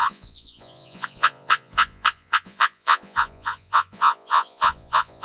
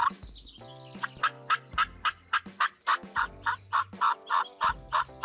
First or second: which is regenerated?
first